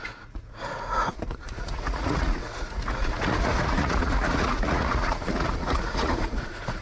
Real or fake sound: fake